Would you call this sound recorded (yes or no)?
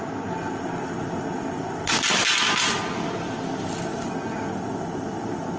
yes